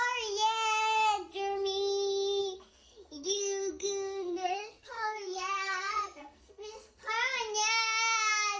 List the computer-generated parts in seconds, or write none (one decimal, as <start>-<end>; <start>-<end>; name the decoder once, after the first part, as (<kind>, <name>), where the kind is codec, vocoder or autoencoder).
2.4-7.1 (codec, SNAC)